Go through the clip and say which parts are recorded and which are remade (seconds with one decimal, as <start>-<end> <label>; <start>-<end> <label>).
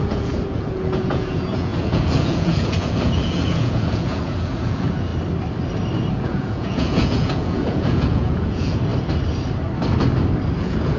0.0-5.1 remade; 5.1-6.1 recorded; 6.1-8.9 remade; 8.9-10.6 recorded; 10.6-11.0 remade